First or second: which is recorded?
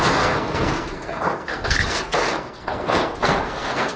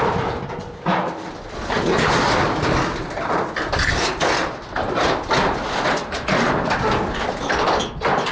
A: second